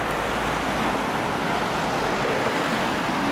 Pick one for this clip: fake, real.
real